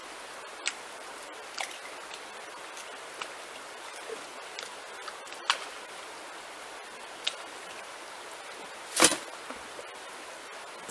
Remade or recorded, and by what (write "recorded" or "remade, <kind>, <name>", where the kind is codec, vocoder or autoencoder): recorded